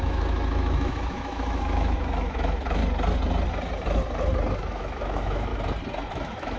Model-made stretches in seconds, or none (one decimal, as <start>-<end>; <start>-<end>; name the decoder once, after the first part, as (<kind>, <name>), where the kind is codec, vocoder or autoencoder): 0.0-2.8 (autoencoder, DAC-VAE); 4.6-5.5; 6.1-6.6